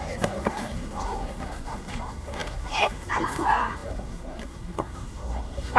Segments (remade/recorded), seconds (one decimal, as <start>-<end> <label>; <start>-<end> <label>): 0.0-5.8 remade